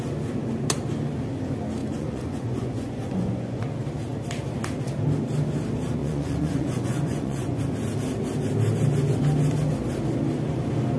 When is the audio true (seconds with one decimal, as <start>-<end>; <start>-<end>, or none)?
0.0-1.8; 3.6-6.0; 7.6-11.0